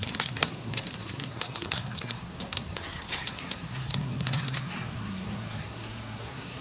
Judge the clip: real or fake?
fake